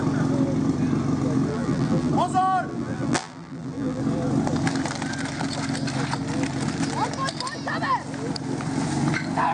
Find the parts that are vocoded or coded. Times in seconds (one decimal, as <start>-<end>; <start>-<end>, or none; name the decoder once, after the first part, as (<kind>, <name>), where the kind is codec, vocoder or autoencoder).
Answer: 1.5-2.1 (vocoder, BigVGAN v2); 2.7-4.0